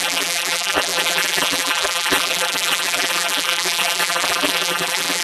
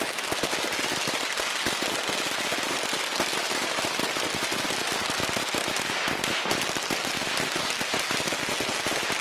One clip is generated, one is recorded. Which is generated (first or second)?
first